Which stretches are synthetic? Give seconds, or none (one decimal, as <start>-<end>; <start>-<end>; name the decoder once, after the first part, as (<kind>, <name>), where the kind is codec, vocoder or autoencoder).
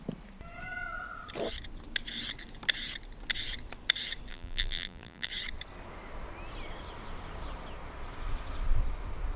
4.3-5.3 (vocoder, BigVGAN v2)